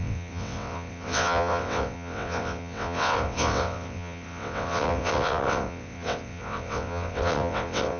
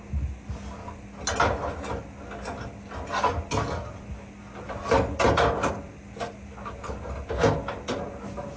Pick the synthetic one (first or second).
first